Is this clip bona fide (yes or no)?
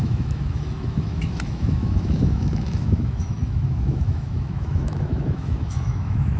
no